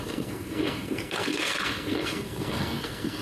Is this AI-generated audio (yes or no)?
yes